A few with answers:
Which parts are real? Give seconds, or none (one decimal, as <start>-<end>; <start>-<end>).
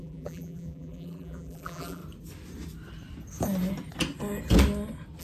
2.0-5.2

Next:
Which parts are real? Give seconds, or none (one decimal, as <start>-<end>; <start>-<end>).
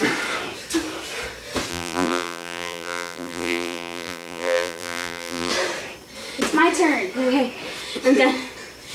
0.0-1.7; 5.5-8.9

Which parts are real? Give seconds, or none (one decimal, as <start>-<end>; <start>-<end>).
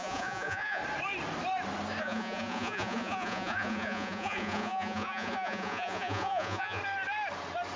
0.8-2.0; 6.8-7.8